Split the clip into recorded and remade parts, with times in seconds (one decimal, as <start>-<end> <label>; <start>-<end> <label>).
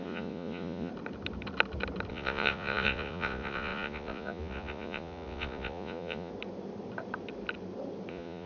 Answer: 0.0-0.9 remade; 0.9-2.1 recorded; 2.1-6.3 remade; 6.3-8.1 recorded; 8.1-8.5 remade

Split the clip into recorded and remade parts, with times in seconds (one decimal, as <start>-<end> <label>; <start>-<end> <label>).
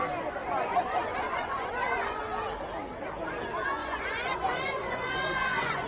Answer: 0.0-0.4 recorded; 0.4-2.2 remade; 2.2-3.8 recorded; 3.8-5.9 remade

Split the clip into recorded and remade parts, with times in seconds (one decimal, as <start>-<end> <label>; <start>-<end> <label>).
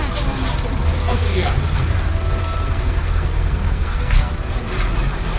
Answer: 0.0-1.0 recorded; 1.0-1.9 remade; 1.9-2.4 recorded; 2.4-4.3 remade; 4.3-5.4 recorded